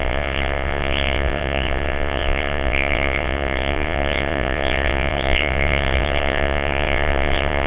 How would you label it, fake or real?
fake